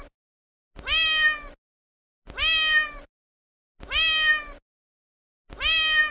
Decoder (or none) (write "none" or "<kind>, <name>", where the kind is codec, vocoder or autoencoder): none